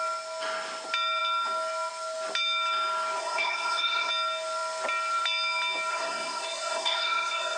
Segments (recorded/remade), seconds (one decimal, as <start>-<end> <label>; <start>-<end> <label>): 0.0-3.2 recorded; 3.2-4.1 remade; 4.1-5.9 recorded; 5.9-7.6 remade